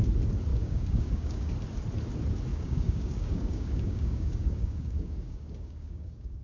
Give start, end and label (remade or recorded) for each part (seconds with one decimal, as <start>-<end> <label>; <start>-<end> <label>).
0.0-0.5 recorded; 0.5-1.5 remade; 1.5-2.5 recorded; 2.5-6.4 remade

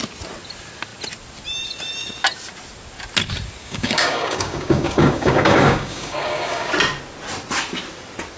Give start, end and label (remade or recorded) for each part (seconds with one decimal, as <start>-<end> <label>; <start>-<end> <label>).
0.0-3.6 recorded; 3.6-6.7 remade; 6.7-8.4 recorded

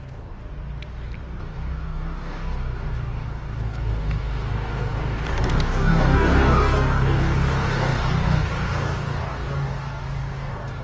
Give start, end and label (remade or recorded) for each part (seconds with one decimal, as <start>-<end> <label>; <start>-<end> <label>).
0.0-0.4 remade; 0.4-1.4 recorded; 1.4-10.8 remade